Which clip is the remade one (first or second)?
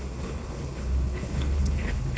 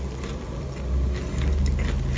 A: first